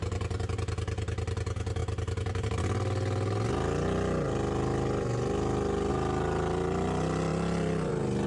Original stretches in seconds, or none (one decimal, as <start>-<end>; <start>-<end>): 0.0-8.3